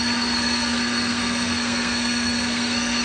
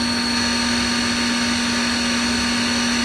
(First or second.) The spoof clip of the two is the first